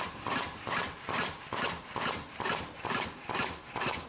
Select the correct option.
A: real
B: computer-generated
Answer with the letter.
A